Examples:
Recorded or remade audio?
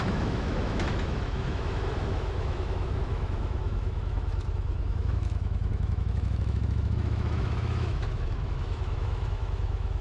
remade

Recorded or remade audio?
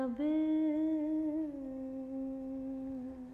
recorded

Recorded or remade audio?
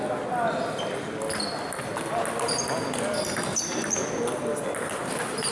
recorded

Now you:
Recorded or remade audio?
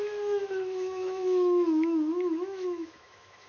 remade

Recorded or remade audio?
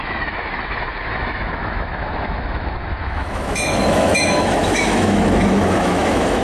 remade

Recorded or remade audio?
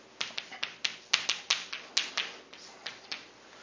recorded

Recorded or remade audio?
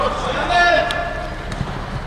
recorded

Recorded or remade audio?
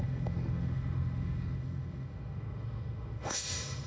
remade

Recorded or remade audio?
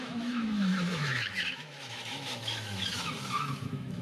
remade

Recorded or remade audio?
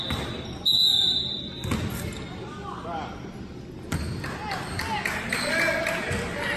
recorded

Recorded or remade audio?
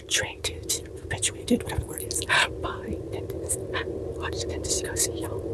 recorded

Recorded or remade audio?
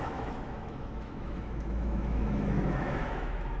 remade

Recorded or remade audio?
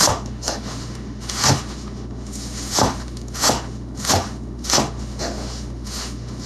remade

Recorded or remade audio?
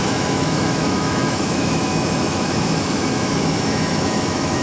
remade